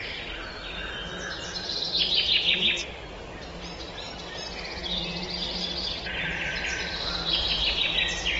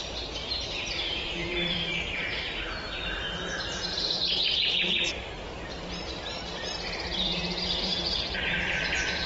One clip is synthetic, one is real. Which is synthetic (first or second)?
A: second